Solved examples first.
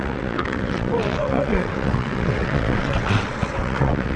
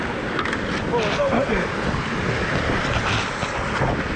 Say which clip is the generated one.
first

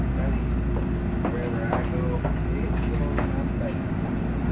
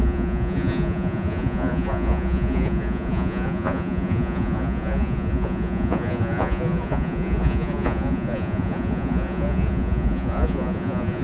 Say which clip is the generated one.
second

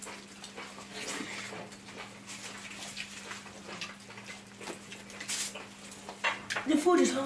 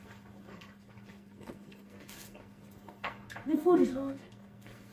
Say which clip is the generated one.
second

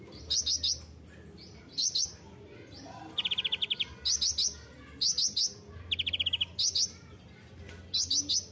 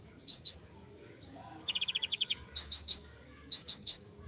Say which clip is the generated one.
second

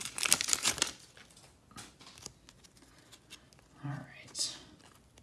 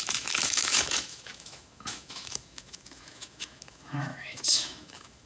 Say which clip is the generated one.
second